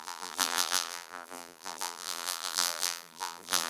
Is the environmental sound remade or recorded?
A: remade